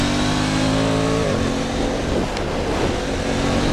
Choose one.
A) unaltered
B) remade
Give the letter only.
A